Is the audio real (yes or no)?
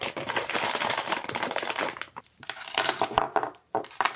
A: no